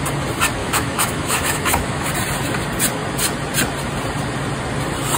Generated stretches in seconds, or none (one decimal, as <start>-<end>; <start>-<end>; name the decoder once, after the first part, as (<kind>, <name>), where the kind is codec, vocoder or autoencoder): 0.6-2.1 (autoencoder, DAC-VAE)